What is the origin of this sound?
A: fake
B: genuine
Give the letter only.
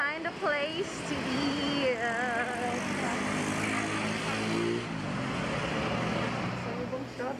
B